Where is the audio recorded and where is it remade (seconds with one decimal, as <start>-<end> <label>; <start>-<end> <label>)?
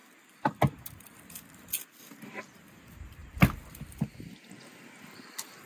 0.0-5.7 recorded